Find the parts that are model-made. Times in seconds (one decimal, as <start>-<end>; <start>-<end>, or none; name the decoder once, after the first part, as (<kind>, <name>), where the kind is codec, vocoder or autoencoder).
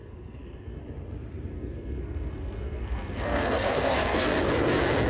0.0-0.8 (codec, SNAC); 1.5-4.6